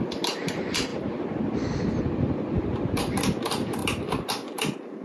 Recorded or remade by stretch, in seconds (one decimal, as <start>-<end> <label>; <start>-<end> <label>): 0.0-5.0 recorded